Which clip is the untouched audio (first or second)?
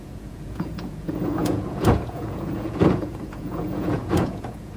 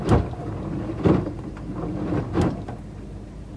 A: second